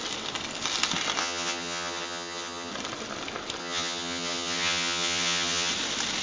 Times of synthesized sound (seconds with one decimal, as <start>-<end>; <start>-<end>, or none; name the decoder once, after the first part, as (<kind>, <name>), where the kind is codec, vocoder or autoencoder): 1.2-2.7 (vocoder, HiFi-GAN); 3.6-5.7

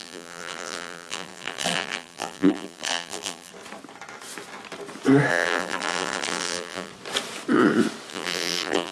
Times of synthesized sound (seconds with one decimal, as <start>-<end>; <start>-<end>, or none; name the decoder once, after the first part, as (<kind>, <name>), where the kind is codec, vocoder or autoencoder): 0.0-3.5 (vocoder, BigVGAN v2); 5.3-6.9; 8.1-8.9

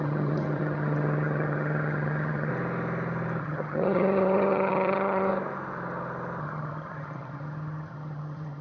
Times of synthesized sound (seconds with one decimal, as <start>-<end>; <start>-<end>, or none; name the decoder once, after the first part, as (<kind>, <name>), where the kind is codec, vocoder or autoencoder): 0.0-2.5 (vocoder, HiFi-GAN); 3.4-5.3; 6.4-8.6